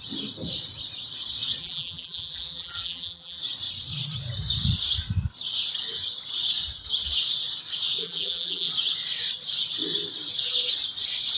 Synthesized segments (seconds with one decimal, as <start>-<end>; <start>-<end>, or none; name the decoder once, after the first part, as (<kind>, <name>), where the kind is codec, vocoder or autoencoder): 1.6-3.4 (vocoder, BigVGAN v2); 8.0-8.7